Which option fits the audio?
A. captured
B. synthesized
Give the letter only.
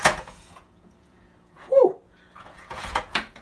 B